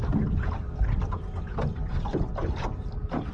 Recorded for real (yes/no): yes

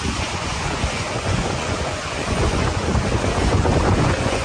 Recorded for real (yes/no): no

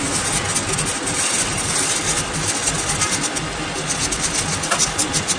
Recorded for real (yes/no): yes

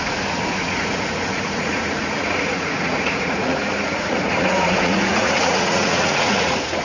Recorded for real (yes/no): no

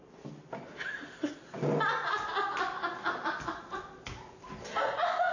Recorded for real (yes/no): yes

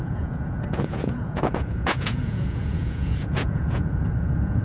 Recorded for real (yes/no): no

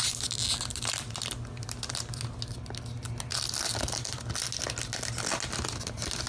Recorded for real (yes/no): yes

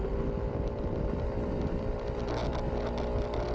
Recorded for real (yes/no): yes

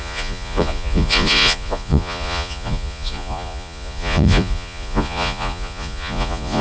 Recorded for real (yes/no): no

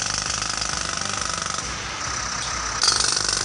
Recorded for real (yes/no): yes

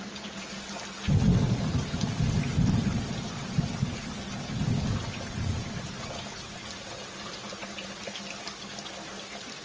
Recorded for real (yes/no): yes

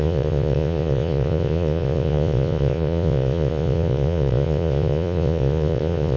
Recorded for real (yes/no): no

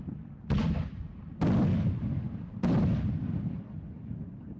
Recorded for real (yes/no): yes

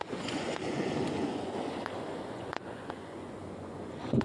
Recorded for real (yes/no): no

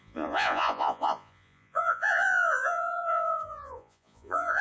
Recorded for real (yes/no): no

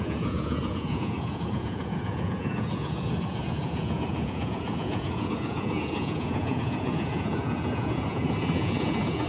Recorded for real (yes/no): no